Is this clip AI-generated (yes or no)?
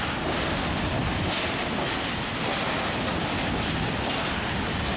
no